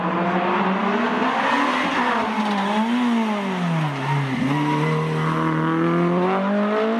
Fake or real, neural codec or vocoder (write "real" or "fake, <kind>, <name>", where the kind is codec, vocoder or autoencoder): real